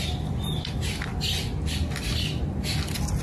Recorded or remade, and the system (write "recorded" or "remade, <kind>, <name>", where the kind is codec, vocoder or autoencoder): recorded